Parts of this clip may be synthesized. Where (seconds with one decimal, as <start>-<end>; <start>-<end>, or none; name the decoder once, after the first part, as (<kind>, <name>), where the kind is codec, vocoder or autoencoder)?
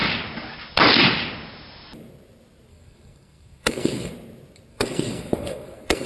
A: 2.7-4.1 (codec, SNAC); 4.7-6.1